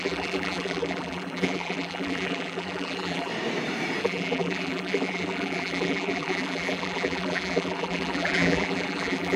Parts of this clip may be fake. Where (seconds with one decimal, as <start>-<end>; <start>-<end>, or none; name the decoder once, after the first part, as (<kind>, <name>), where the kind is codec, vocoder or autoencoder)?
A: 0.0-3.3 (vocoder, BigVGAN v2); 4.0-9.4